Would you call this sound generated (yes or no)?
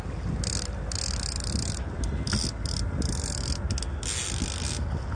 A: no